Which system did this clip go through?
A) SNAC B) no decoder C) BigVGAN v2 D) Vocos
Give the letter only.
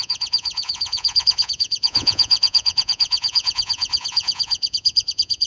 D